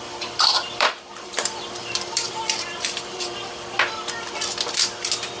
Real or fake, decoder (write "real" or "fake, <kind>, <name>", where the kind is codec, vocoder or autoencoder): fake, vocoder, BigVGAN v2